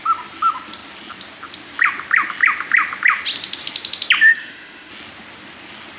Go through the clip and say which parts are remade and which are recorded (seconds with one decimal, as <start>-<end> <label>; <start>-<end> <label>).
0.0-4.3 recorded; 4.3-4.9 remade; 4.9-6.0 recorded